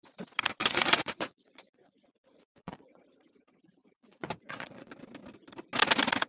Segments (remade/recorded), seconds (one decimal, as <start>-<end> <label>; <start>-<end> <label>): 0.0-0.6 recorded; 0.6-3.0 remade; 3.0-4.0 recorded; 4.0-4.9 remade; 4.9-6.3 recorded